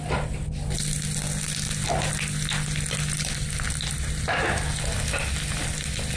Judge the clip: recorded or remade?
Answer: recorded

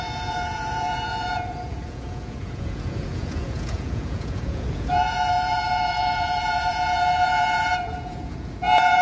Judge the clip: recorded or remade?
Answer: remade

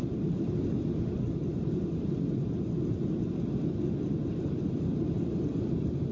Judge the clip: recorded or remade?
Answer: recorded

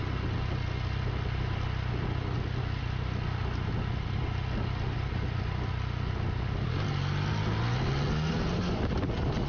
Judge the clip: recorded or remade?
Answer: recorded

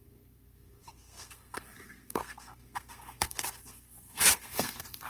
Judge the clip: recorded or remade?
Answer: remade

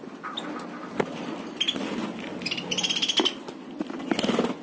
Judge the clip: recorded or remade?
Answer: recorded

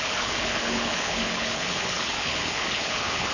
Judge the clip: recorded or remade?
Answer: remade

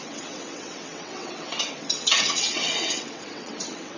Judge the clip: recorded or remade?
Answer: remade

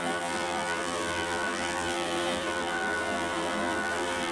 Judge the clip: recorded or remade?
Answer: remade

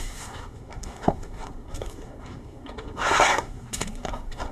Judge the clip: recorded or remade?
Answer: remade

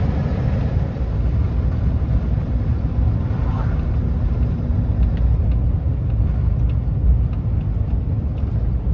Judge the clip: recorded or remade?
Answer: recorded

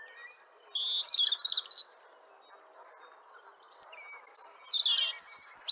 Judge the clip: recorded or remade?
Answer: recorded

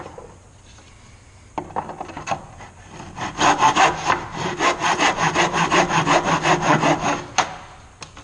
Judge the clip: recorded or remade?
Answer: recorded